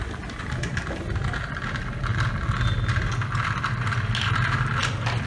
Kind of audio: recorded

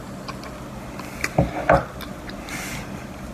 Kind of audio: recorded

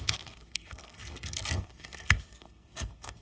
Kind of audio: remade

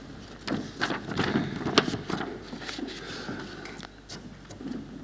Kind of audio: recorded